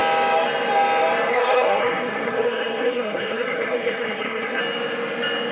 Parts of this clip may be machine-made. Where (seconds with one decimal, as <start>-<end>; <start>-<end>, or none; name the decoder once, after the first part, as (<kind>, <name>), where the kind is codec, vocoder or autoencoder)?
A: 1.3-4.6 (codec, SNAC)